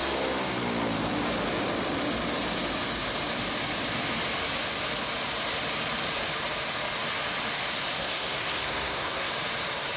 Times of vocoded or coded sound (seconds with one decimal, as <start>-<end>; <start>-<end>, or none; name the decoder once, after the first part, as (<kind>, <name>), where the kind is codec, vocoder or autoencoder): 8.0-9.3 (codec, SNAC)